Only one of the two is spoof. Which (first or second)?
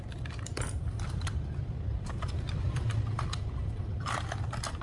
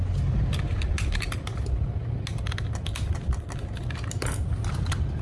first